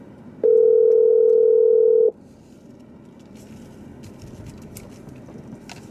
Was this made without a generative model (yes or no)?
yes